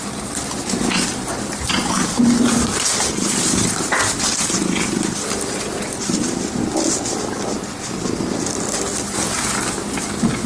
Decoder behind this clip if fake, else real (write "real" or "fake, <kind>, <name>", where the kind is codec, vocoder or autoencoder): real